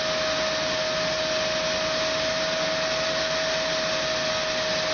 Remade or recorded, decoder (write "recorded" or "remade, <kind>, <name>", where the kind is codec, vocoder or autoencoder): recorded